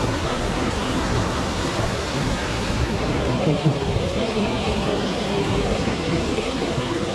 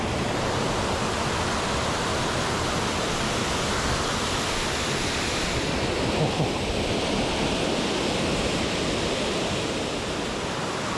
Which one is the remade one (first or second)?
first